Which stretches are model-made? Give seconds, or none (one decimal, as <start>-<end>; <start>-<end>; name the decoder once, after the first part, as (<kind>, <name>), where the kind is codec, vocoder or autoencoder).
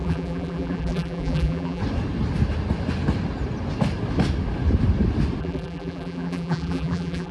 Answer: 0.0-1.8 (vocoder, BigVGAN v2); 5.4-7.3